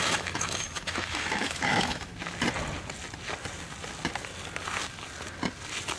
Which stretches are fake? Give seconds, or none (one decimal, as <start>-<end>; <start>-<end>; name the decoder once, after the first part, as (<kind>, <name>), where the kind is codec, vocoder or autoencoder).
0.0-2.1 (autoencoder, DAC-VAE)